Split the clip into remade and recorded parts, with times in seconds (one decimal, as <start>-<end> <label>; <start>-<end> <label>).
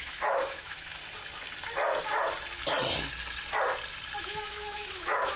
0.0-1.0 remade; 1.0-4.2 recorded; 4.2-5.4 remade